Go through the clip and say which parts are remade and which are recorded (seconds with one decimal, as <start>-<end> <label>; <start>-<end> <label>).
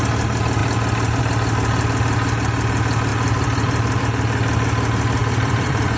0.0-3.1 recorded; 3.1-4.0 remade; 4.0-5.2 recorded; 5.2-6.0 remade